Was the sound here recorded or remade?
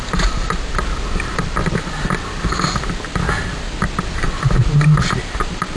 recorded